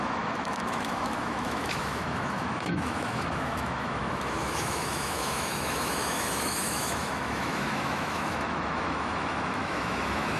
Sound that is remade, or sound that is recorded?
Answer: remade